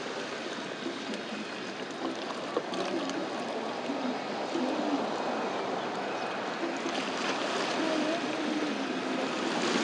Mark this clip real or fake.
real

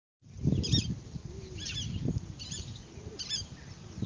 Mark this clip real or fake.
real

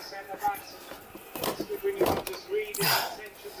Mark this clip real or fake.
real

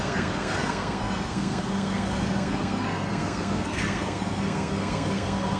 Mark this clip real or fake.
fake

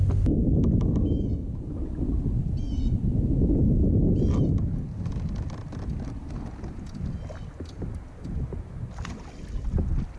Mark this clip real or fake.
real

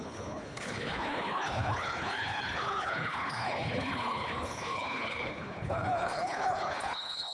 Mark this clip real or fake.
fake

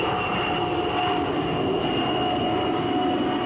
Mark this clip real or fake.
real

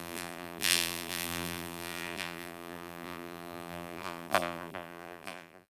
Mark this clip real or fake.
fake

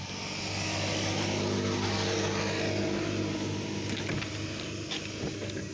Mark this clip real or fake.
real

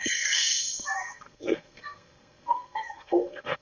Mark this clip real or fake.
fake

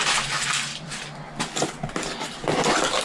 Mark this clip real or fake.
real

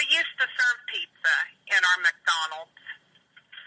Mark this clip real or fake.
real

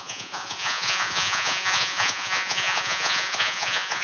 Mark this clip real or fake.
fake